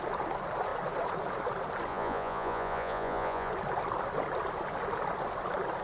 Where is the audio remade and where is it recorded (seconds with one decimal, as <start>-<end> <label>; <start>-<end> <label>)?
0.0-1.9 recorded; 1.9-3.5 remade; 3.5-5.8 recorded